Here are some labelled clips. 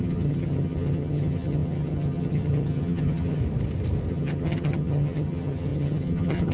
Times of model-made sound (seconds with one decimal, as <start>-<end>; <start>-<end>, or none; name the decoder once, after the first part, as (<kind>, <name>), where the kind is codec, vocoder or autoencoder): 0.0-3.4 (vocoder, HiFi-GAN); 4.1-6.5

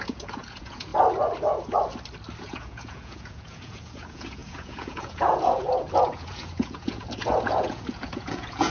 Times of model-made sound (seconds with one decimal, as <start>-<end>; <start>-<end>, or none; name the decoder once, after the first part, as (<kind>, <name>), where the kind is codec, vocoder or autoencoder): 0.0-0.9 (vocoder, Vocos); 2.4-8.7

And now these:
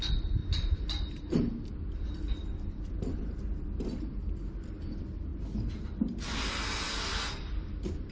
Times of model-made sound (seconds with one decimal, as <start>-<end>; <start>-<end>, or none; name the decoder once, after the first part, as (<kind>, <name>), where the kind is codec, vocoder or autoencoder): none